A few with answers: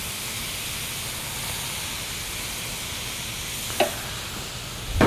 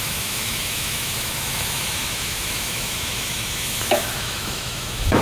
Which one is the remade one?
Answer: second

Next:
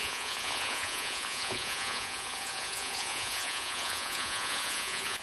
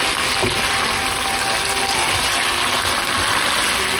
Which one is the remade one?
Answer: first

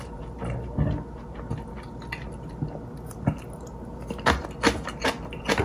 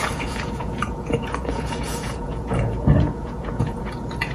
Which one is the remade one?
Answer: second